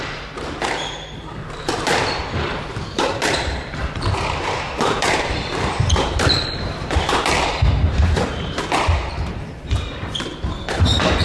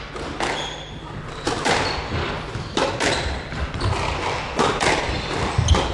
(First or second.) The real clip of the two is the second